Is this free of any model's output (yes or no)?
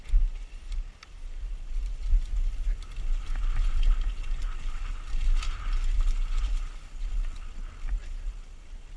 yes